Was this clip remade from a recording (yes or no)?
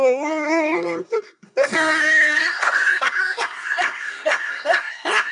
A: yes